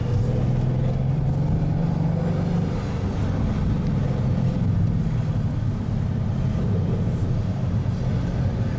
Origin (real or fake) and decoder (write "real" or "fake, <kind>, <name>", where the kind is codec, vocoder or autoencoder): real